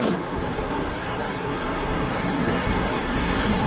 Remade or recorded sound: remade